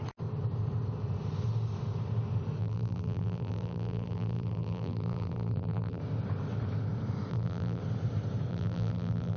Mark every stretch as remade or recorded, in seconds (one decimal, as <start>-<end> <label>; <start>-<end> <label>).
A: 0.0-2.6 recorded; 2.6-6.0 remade; 6.0-7.3 recorded; 7.3-7.8 remade; 7.8-8.5 recorded; 8.5-9.4 remade